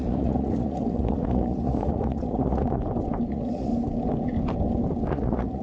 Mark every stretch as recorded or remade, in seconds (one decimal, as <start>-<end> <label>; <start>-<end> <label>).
0.0-2.8 remade; 2.8-3.3 recorded; 3.3-3.7 remade; 3.7-5.1 recorded; 5.1-5.6 remade